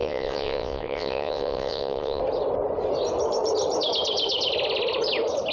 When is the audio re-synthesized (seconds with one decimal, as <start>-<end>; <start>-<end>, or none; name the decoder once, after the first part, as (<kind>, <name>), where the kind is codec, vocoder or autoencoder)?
0.0-2.2 (vocoder, WaveNeXt)